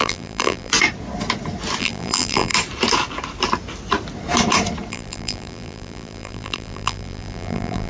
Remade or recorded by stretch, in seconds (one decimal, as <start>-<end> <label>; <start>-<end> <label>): 0.0-0.7 remade; 0.7-1.8 recorded; 1.8-2.5 remade; 2.5-4.9 recorded; 4.9-7.9 remade